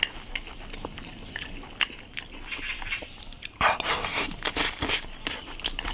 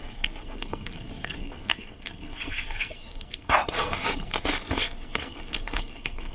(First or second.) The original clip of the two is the first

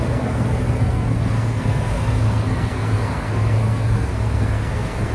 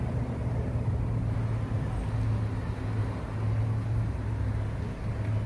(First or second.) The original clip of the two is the second